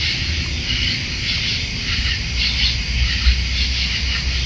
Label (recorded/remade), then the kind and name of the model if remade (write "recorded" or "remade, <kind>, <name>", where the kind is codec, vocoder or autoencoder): recorded